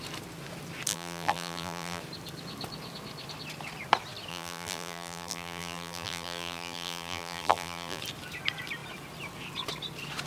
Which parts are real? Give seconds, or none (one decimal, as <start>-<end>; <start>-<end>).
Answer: 0.0-0.9; 2.0-4.3; 8.0-10.3